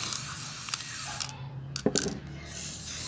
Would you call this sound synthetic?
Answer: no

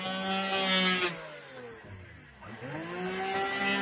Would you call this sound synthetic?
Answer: no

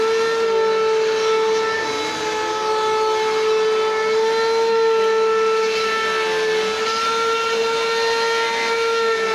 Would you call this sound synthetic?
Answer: no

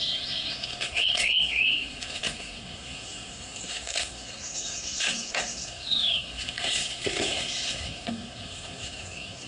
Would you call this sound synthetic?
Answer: yes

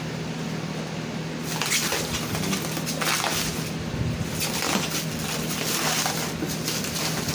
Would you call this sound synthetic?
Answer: no